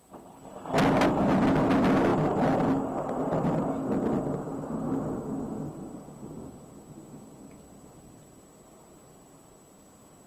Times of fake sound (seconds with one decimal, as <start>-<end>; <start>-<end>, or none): none

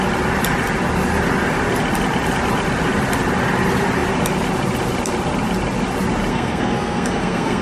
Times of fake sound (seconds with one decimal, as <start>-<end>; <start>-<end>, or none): 6.3-7.6

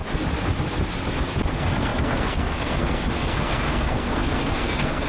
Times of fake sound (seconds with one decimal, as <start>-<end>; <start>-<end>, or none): 1.5-5.1

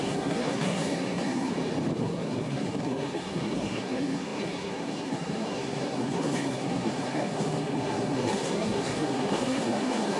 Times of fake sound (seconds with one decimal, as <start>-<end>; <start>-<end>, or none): 0.0-1.5; 2.0-10.2

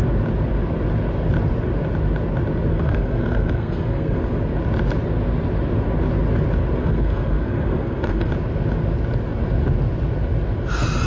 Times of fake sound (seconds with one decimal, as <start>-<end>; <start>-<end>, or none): 2.7-4.2; 6.8-8.3

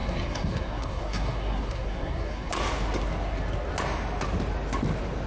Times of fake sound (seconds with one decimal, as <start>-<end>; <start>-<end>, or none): 0.0-2.5

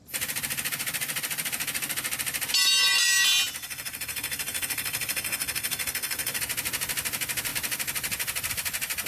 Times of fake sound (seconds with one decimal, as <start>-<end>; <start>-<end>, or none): 3.6-6.4

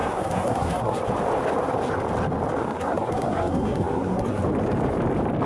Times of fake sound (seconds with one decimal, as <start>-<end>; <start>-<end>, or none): 0.0-1.0; 2.6-4.4